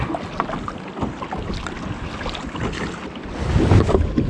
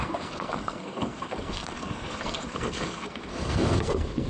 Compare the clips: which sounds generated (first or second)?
second